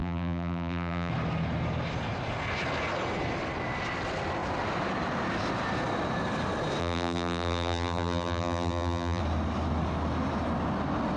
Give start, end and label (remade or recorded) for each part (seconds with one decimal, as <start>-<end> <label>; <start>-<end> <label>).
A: 0.0-1.1 remade; 1.1-6.8 recorded; 6.8-9.2 remade; 9.2-11.2 recorded